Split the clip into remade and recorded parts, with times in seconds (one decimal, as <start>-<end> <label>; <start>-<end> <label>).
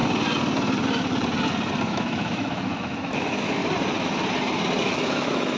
0.0-1.8 recorded; 1.8-3.6 remade; 3.6-4.8 recorded; 4.8-5.6 remade